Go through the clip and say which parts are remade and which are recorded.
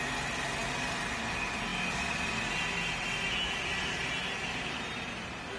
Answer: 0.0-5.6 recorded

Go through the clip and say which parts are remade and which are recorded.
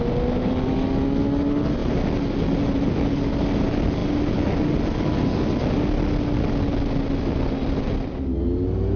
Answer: 0.0-9.0 recorded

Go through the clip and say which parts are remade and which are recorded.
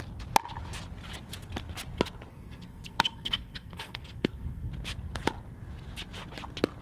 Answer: 0.0-2.3 recorded; 2.3-4.7 remade; 4.7-6.8 recorded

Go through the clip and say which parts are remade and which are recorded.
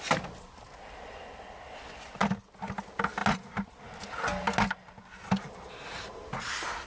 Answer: 0.0-6.9 recorded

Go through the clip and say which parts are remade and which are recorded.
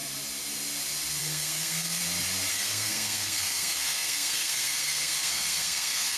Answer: 0.0-1.2 recorded; 1.2-2.0 remade; 2.0-2.5 recorded; 2.5-6.2 remade